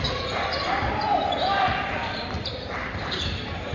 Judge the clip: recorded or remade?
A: remade